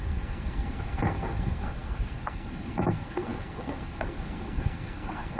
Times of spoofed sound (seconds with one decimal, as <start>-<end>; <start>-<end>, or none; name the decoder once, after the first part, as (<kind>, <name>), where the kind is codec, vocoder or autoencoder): 0.0-5.4 (codec, SNAC)